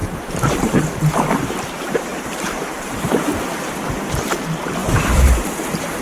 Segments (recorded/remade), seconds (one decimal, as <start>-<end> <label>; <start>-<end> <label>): 0.0-0.9 remade; 0.9-2.1 recorded; 2.1-3.3 remade; 3.3-4.8 recorded; 4.8-6.0 remade